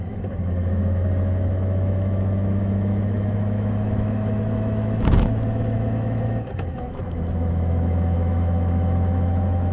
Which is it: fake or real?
fake